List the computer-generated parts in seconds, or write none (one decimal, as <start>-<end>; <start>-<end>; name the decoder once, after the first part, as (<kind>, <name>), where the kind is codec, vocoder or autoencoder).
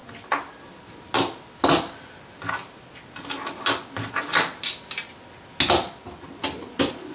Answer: none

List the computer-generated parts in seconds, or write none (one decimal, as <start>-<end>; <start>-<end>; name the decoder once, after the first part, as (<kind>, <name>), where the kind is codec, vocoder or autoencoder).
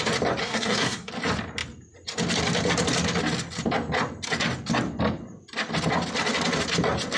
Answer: 0.4-1.1 (codec, SNAC)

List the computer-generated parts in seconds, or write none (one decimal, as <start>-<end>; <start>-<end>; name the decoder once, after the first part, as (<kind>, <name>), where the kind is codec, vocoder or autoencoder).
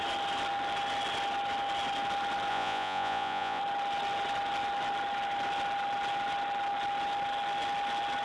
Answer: 2.5-3.6 (vocoder, Vocos)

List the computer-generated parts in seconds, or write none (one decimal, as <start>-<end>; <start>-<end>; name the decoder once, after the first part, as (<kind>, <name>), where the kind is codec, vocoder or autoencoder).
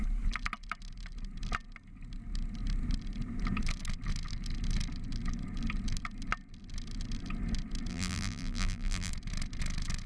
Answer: 7.9-9.1 (vocoder, BigVGAN v2)